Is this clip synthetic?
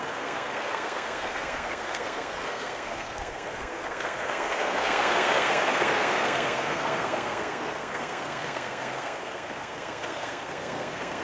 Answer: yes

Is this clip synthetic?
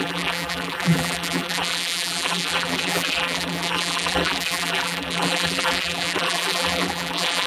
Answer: yes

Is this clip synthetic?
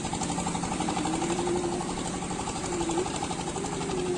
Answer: yes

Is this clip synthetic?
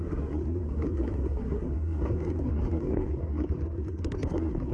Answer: yes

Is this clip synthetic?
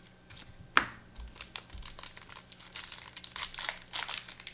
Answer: no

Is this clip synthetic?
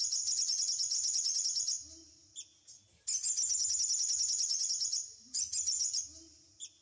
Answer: no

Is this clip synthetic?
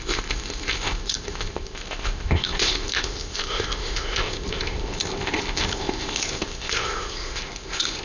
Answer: yes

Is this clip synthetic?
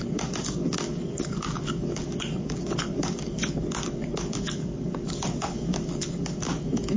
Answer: yes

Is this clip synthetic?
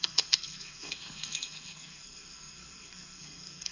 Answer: yes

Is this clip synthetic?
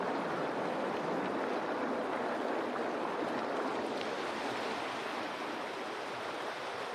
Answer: no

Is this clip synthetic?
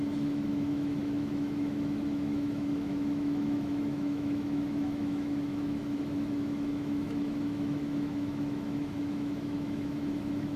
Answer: yes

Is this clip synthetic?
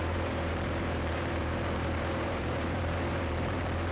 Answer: yes